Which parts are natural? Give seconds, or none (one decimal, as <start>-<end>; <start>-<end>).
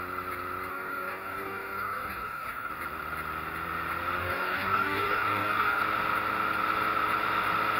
0.0-0.7; 2.7-4.2; 5.8-7.8